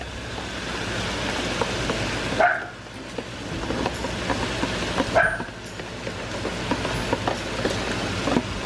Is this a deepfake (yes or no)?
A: no